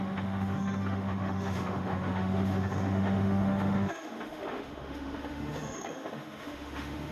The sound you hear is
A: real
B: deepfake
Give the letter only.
B